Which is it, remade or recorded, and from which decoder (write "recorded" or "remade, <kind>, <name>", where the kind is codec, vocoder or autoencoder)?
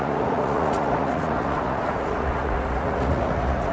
remade, vocoder, Vocos